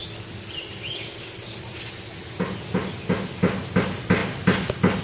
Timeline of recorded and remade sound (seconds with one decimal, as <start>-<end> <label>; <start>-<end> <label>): 0.0-5.0 recorded